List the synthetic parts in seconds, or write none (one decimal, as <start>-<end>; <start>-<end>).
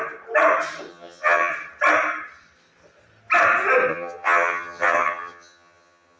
0.9-1.5; 3.9-6.2